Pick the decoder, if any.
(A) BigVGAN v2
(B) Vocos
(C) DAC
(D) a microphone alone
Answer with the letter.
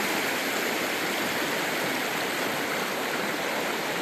A